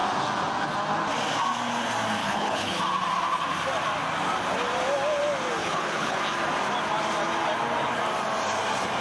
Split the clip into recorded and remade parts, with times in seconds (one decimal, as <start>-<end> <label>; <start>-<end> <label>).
0.0-2.2 recorded; 2.2-2.8 remade; 2.8-5.6 recorded; 5.6-6.2 remade; 6.2-9.0 recorded